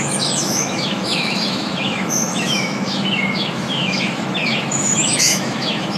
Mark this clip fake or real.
fake